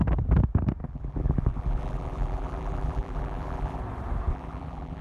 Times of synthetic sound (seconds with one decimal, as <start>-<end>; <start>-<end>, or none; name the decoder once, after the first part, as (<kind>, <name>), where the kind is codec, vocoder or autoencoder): 0.8-3.8 (vocoder, BigVGAN v2); 4.3-5.0